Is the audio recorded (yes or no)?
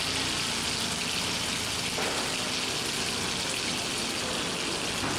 yes